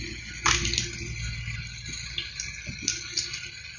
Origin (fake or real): real